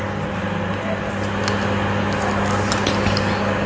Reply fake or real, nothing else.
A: real